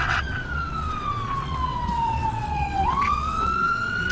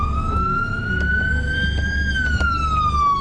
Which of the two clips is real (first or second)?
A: second